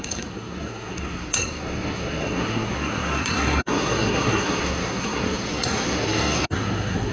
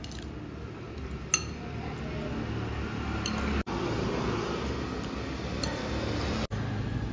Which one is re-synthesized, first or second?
first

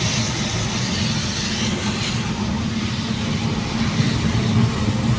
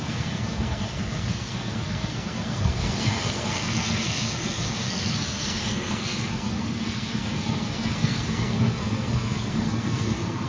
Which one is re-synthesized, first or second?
second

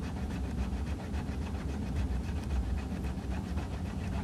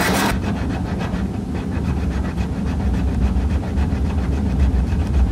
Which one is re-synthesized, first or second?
first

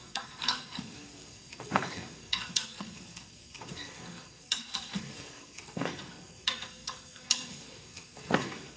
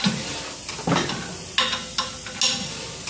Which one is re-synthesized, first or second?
first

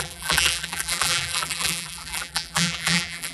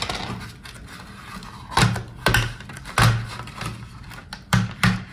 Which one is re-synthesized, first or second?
first